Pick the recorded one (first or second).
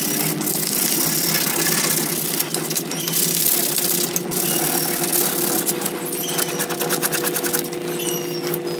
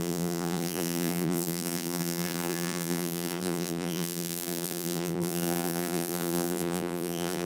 first